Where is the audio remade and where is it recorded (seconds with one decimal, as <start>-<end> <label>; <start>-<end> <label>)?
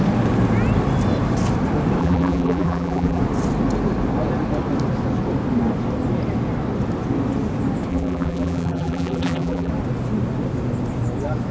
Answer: 0.0-2.0 recorded; 2.0-3.2 remade; 3.2-7.9 recorded; 7.9-9.7 remade; 9.7-11.5 recorded